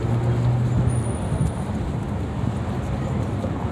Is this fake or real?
real